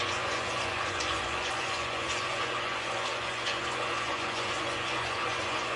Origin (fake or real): fake